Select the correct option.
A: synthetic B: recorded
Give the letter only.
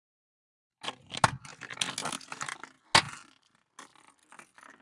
B